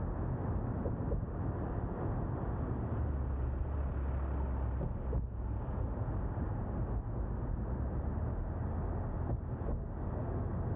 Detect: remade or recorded recorded